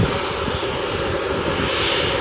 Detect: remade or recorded recorded